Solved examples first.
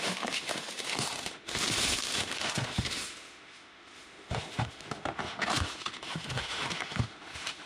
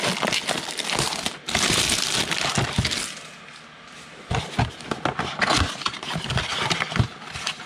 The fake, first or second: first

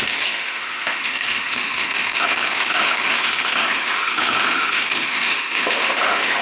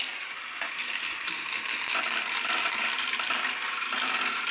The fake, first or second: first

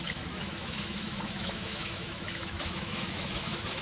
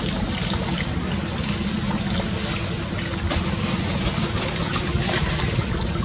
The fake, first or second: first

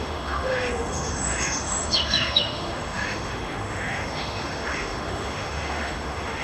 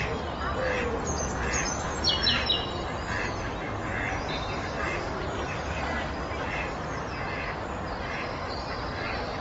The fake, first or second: first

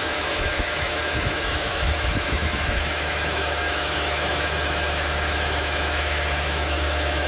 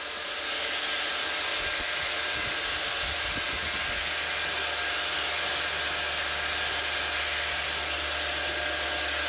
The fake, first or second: first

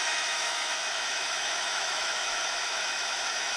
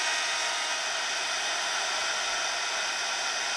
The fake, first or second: first